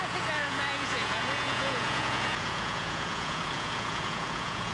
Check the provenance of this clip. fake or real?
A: fake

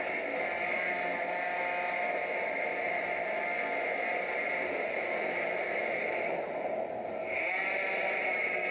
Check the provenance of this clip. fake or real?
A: real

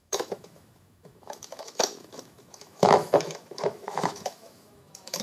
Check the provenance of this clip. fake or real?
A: fake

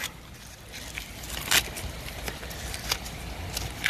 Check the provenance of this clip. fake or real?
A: real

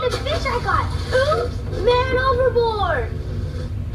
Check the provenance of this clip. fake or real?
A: real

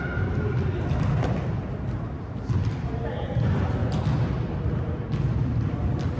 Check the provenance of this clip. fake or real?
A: real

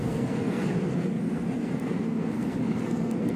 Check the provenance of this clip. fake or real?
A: fake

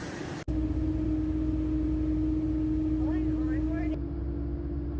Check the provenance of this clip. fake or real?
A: real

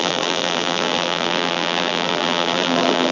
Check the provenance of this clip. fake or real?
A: fake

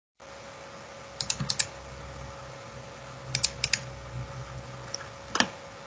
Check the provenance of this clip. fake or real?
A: real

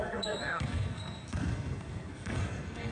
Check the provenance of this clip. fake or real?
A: fake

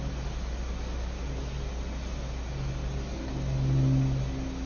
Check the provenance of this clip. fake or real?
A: real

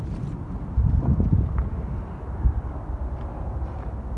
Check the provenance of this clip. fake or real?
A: real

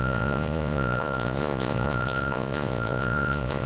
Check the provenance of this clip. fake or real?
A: fake